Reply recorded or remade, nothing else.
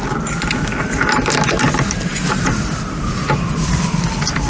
recorded